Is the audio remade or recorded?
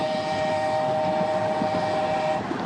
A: recorded